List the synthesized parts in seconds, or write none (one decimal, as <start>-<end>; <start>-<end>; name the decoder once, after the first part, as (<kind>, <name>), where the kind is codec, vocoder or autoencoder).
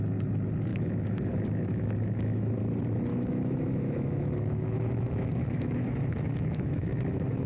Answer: 0.7-2.6 (autoencoder, DAC-VAE); 3.1-7.5